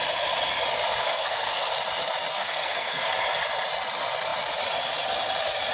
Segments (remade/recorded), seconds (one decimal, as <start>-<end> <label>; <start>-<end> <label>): 0.0-1.0 recorded; 1.0-1.7 remade; 1.7-2.3 recorded; 2.3-3.1 remade; 3.1-5.7 recorded